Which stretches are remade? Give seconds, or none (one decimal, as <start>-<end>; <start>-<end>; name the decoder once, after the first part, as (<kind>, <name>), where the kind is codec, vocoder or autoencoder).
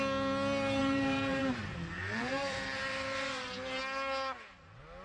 0.8-3.8 (vocoder, BigVGAN v2)